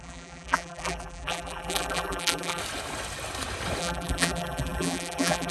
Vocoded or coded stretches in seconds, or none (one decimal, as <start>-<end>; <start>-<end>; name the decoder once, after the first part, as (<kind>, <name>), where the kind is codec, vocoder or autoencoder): 0.0-2.6 (vocoder, BigVGAN v2); 3.8-5.5